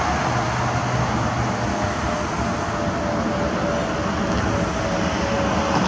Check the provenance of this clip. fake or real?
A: real